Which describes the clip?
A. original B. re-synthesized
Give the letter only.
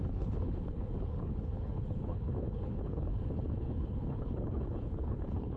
B